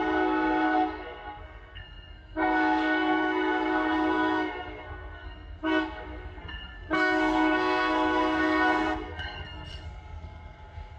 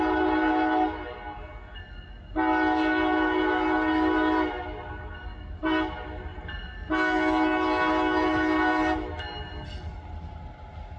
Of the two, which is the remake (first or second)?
first